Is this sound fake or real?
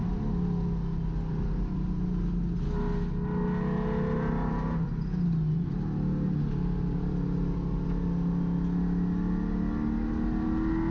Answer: real